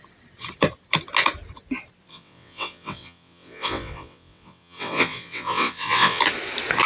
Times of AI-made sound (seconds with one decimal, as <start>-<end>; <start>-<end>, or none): 2.1-6.2

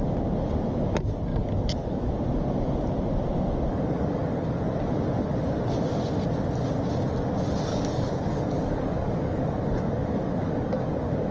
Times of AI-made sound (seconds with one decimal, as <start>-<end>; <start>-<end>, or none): 1.3-2.1; 3.7-4.6; 7.7-11.3

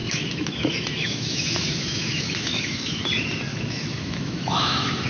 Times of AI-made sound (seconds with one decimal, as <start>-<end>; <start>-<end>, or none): 0.0-3.0; 3.5-5.1

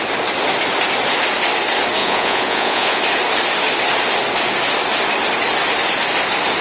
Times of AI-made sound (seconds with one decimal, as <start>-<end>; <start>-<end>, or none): 2.0-3.0